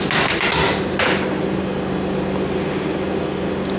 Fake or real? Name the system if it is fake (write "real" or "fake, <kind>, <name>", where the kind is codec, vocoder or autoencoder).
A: real